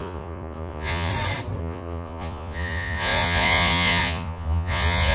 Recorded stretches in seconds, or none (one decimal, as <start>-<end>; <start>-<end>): 1.1-1.6